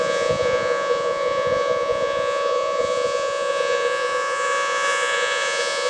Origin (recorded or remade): remade